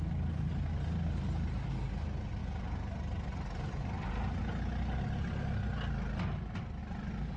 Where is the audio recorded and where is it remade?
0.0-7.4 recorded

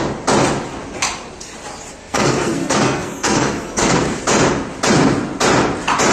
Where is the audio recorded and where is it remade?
0.0-2.0 recorded; 2.0-4.2 remade; 4.2-6.1 recorded

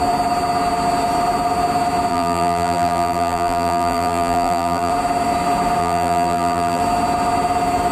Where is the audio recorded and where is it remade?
0.0-2.1 recorded; 2.1-4.9 remade; 4.9-5.8 recorded; 5.8-6.8 remade; 6.8-7.9 recorded

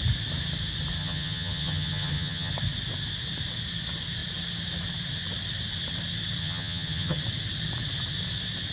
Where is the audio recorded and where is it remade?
0.0-1.0 recorded; 1.0-2.5 remade; 2.5-6.4 recorded; 6.4-7.2 remade; 7.2-8.7 recorded

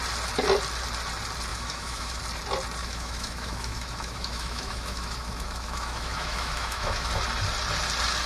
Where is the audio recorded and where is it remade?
0.0-1.5 recorded; 1.5-2.2 remade; 2.2-2.8 recorded; 2.8-7.1 remade; 7.1-8.3 recorded

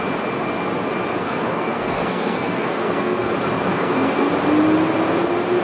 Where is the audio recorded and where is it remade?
0.0-1.2 recorded; 1.2-3.3 remade; 3.3-3.7 recorded; 3.7-4.3 remade; 4.3-5.6 recorded